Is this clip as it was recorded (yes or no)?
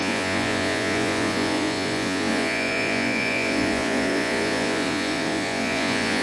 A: no